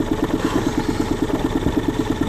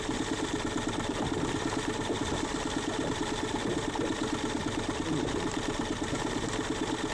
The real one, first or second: first